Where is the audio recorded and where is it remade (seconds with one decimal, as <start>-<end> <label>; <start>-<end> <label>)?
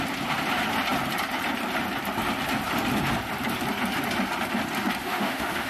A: 0.0-5.0 recorded; 5.0-5.7 remade